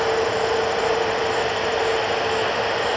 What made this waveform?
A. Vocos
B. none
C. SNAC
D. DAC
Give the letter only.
B